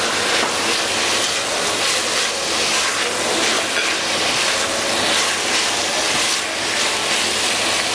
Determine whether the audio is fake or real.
real